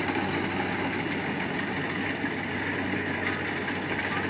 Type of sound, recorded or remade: recorded